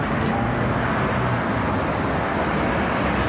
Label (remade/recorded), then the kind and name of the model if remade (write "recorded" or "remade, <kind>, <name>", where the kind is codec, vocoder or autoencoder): recorded